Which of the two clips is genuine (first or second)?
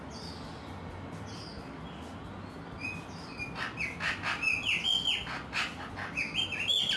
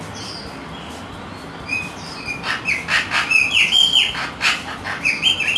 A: first